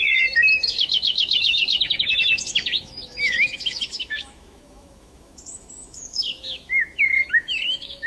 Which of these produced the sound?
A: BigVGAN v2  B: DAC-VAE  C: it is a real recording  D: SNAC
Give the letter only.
B